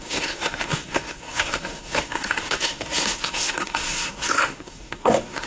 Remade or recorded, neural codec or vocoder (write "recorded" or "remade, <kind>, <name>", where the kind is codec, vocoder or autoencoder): remade, codec, SNAC